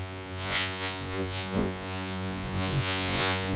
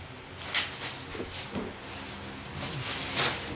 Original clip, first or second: second